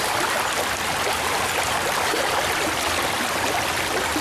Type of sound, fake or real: fake